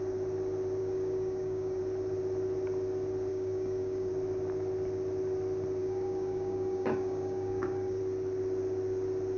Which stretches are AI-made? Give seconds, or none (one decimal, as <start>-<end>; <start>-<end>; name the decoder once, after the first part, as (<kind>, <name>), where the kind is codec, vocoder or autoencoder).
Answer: 0.8-1.8 (codec, DAC); 3.3-4.1; 5.8-8.0

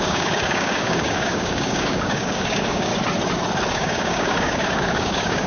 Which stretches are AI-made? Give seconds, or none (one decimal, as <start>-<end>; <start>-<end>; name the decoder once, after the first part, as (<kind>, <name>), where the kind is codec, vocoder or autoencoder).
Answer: 0.0-2.9 (codec, DAC); 3.7-5.5

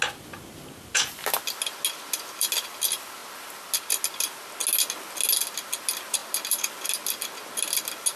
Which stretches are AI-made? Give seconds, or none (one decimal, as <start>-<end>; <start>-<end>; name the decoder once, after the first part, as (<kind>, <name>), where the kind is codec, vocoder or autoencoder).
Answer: none